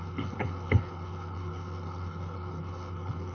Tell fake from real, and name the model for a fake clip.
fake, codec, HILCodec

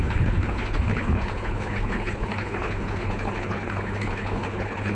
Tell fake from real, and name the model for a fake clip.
fake, codec, HILCodec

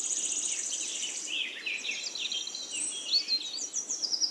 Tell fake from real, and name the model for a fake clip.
real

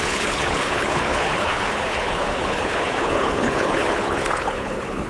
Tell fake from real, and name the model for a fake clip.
fake, codec, HILCodec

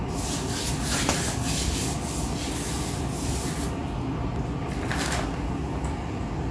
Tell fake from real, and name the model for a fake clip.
real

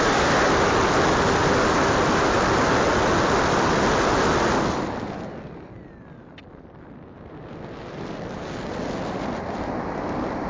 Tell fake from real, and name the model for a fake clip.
real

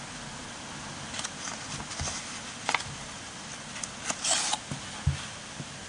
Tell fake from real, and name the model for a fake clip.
real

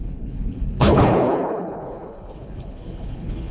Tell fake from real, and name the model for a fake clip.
fake, codec, HILCodec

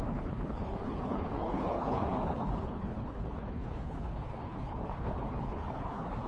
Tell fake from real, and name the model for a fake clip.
fake, codec, HILCodec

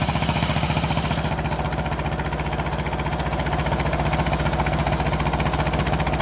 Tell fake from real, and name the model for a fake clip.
real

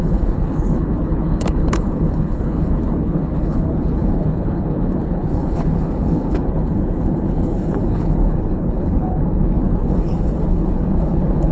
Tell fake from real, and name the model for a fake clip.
fake, codec, HILCodec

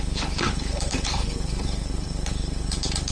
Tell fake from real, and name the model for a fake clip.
fake, codec, HILCodec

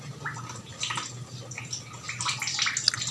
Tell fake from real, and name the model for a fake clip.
real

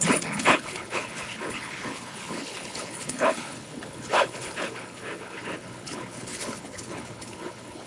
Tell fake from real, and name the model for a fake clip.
fake, codec, HILCodec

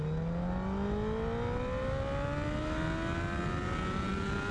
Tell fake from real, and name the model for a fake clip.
real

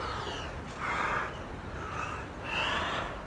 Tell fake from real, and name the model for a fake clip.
real